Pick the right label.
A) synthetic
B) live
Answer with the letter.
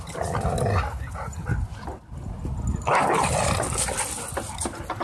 B